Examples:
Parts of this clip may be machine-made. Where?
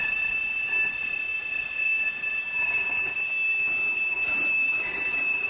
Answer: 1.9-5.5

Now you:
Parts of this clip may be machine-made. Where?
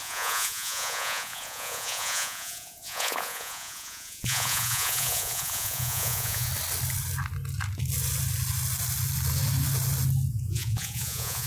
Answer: 0.0-6.5; 10.3-11.5